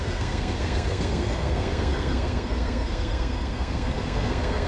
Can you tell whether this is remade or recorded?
remade